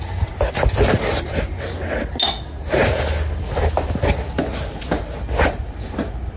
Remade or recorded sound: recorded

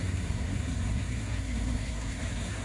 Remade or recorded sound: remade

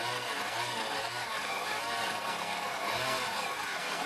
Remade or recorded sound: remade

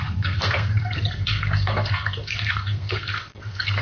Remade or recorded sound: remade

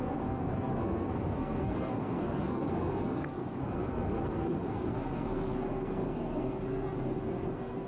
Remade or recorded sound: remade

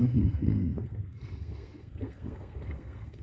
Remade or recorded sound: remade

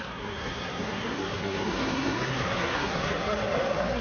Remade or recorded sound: remade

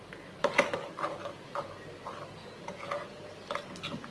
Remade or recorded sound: recorded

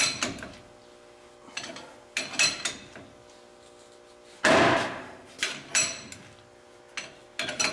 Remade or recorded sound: recorded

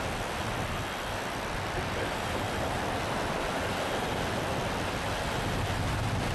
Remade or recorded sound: recorded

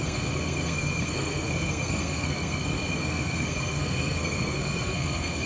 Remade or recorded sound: remade